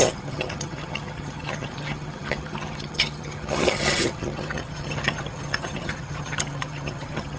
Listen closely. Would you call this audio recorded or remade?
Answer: remade